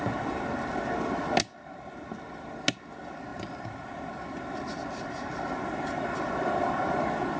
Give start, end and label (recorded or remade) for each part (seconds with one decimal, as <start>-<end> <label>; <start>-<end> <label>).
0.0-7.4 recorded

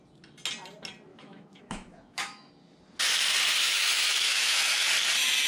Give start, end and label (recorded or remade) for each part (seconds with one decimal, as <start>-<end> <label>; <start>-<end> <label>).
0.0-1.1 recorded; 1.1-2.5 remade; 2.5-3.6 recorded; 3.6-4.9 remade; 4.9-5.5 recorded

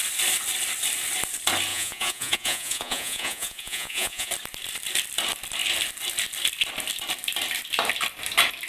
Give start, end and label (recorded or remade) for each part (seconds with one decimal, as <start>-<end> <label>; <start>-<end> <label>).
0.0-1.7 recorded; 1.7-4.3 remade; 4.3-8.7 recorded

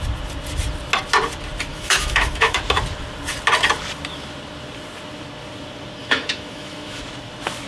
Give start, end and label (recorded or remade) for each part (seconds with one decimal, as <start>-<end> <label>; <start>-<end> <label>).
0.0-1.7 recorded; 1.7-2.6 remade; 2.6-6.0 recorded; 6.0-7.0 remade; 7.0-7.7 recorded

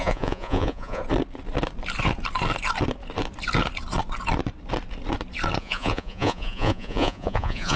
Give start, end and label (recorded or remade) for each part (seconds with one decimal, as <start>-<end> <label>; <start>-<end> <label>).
0.0-1.0 remade; 1.0-5.6 recorded; 5.6-7.8 remade